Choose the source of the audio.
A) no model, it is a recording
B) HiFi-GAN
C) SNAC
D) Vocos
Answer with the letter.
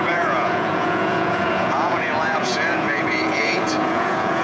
D